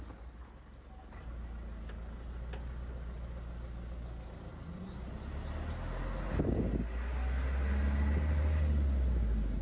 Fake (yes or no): no